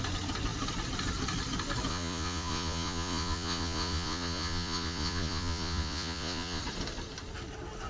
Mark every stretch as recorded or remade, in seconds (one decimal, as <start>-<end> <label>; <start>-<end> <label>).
0.0-1.9 recorded; 1.9-6.6 remade; 6.6-7.9 recorded